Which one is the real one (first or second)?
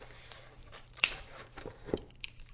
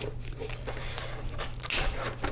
second